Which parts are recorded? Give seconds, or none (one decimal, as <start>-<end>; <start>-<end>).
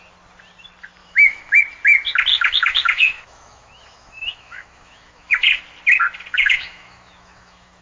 0.0-1.0; 1.6-2.3; 5.6-6.3